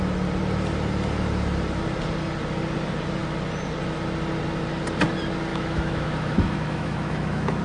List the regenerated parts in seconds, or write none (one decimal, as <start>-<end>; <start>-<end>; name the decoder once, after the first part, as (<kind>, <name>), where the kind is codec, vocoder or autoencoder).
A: 5.5-7.6 (autoencoder, DAC-VAE)